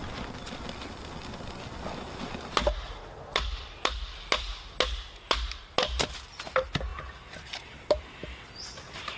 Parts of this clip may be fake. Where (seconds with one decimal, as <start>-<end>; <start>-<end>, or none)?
none

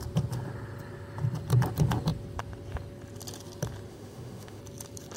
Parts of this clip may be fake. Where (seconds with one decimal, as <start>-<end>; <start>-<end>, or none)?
3.9-4.6